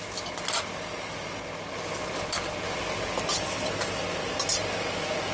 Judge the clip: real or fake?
real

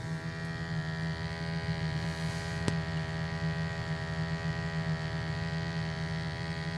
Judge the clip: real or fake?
real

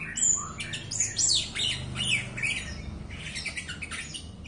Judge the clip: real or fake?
real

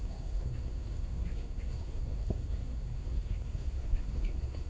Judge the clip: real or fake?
fake